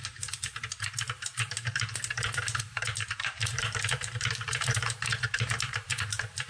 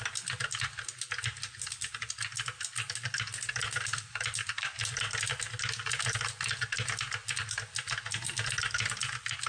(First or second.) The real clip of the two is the second